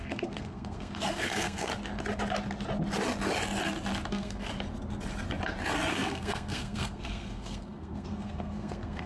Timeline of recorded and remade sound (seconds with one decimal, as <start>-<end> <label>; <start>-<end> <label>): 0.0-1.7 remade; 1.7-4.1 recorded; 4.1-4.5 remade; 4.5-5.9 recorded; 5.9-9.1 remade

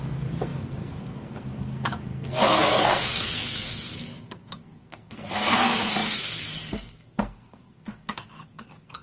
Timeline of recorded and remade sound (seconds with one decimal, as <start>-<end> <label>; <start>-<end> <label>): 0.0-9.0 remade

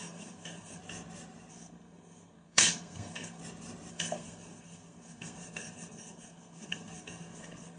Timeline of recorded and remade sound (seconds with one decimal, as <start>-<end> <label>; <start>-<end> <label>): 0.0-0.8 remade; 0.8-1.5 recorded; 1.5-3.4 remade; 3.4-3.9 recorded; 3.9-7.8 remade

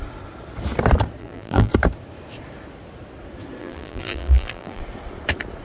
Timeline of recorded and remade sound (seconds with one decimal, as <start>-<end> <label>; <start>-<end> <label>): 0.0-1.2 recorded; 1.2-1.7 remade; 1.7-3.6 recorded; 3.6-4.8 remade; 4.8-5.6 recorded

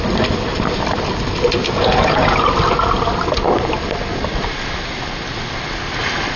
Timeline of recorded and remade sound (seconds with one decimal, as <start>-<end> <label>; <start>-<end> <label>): 0.0-1.6 recorded; 1.6-2.4 remade; 2.4-6.4 recorded